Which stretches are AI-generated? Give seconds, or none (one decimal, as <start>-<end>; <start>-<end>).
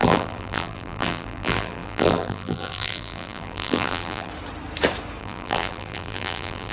0.0-4.3; 5.2-6.7